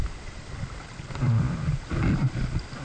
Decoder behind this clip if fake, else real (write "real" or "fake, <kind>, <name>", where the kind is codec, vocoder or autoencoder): real